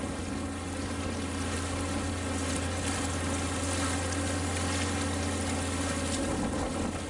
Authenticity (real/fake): real